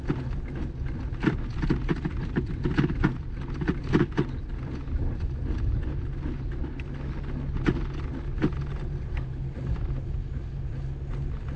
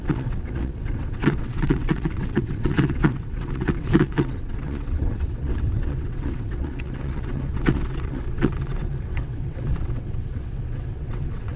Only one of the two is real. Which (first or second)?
first